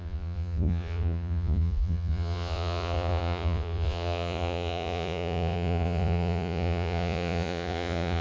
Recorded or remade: remade